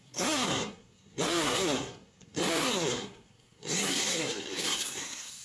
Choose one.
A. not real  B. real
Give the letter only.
A